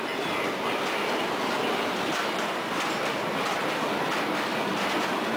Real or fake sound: real